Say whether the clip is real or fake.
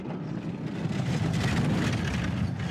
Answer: real